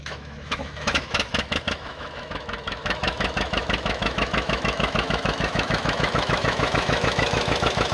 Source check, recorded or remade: remade